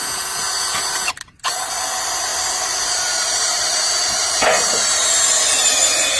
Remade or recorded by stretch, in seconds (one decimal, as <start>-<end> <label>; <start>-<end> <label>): 0.0-1.1 remade; 1.1-6.2 recorded